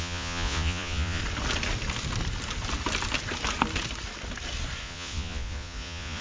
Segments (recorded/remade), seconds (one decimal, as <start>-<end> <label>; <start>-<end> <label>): 0.0-1.2 remade; 1.2-4.8 recorded; 4.8-6.2 remade